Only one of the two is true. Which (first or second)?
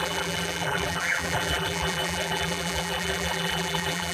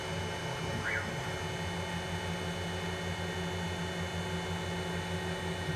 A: second